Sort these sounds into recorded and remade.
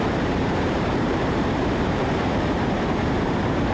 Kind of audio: remade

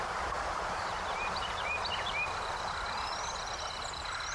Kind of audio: remade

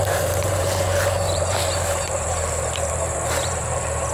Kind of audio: remade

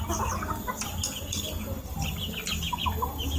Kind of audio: recorded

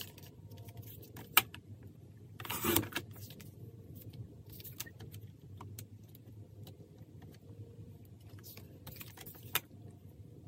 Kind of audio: recorded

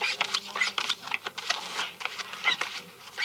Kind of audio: recorded